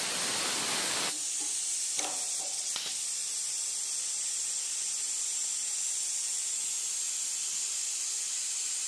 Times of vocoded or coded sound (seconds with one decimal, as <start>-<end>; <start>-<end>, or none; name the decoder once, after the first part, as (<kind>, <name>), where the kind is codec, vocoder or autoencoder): none